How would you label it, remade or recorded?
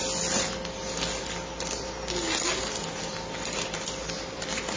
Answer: recorded